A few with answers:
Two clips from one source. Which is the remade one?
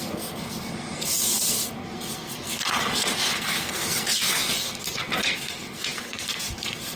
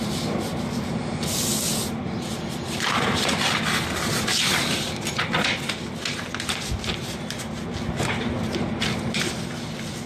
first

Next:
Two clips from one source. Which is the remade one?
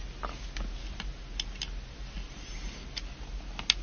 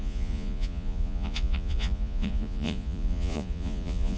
second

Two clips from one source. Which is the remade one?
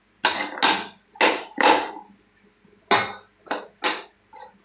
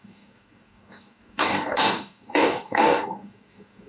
second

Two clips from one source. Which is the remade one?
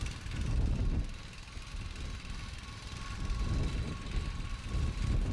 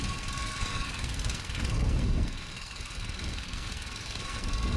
second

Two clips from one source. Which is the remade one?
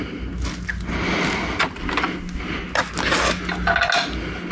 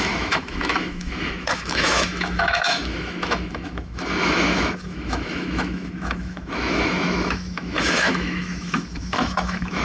second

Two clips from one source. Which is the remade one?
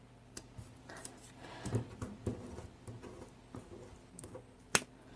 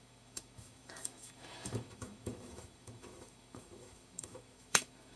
second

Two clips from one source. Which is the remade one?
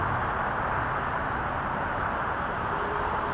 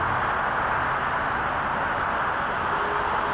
first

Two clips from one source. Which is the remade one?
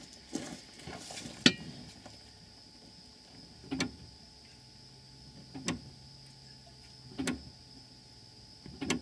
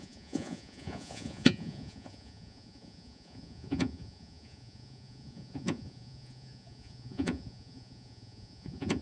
second